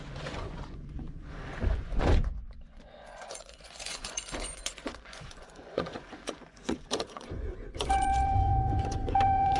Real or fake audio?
fake